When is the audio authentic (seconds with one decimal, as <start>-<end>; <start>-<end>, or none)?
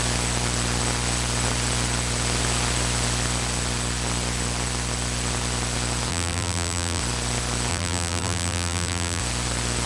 0.0-6.1; 7.0-7.7; 9.2-9.9